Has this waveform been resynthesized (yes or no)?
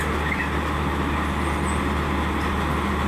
no